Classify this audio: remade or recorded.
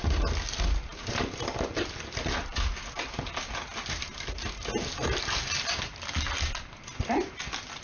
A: recorded